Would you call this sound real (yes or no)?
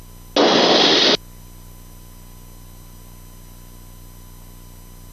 yes